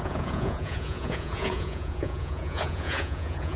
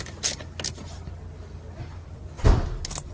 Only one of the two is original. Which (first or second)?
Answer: second